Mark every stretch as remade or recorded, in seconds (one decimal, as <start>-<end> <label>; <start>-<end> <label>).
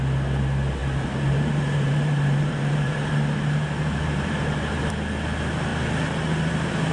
0.0-0.8 recorded; 0.8-4.9 remade; 4.9-6.9 recorded